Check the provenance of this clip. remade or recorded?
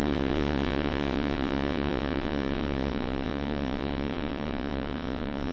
remade